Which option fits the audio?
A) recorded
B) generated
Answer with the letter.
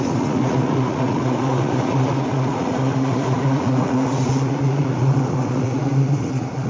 B